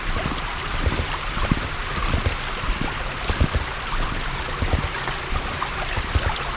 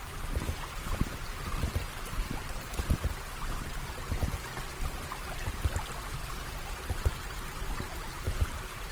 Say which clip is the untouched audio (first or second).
first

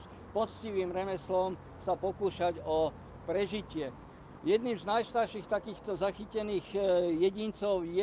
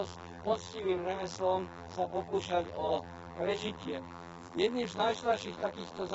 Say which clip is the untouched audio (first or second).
first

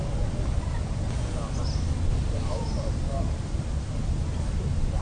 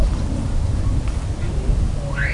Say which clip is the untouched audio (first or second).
second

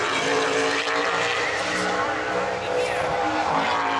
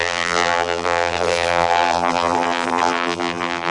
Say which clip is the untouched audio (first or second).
first